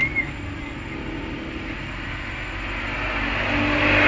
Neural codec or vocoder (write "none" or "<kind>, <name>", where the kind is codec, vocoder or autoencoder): none